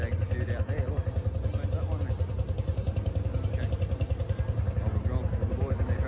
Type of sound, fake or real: real